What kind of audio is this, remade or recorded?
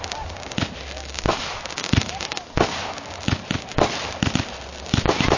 recorded